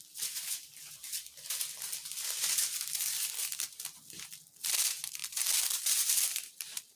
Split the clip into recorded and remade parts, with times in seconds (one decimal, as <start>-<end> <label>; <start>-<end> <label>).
0.0-2.6 recorded; 2.6-3.3 remade; 3.3-5.2 recorded; 5.2-7.0 remade